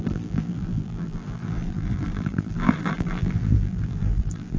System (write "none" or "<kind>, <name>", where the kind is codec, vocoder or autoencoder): vocoder, BigVGAN v2